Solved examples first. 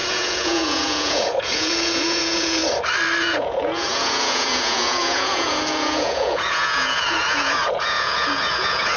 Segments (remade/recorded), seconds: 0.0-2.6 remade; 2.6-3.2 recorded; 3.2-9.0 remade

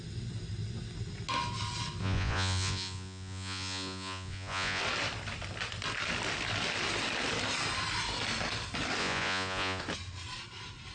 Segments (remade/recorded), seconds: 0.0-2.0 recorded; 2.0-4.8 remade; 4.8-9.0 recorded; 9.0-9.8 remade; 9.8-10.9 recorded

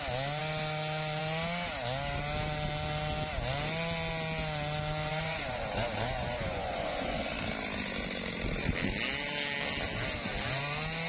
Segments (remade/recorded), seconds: 0.0-5.1 recorded; 5.1-7.3 remade; 7.3-11.1 recorded

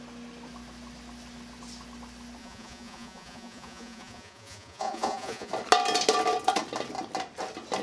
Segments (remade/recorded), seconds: 0.0-2.4 recorded; 2.4-5.5 remade; 5.5-7.8 recorded

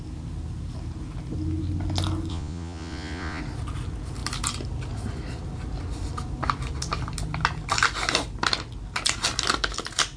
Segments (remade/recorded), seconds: 0.0-2.3 recorded; 2.3-3.4 remade; 3.4-10.2 recorded

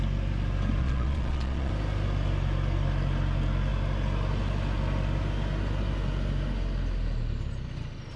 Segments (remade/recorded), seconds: 0.0-0.8 recorded; 0.8-1.7 remade; 1.7-8.2 recorded

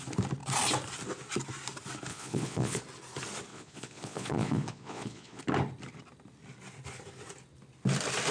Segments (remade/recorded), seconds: 0.0-2.1 recorded; 2.1-2.8 remade; 2.8-3.5 recorded; 3.5-5.4 remade; 5.4-8.3 recorded

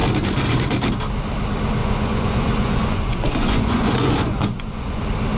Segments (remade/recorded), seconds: 0.0-1.8 recorded; 1.8-5.0 remade; 5.0-5.4 recorded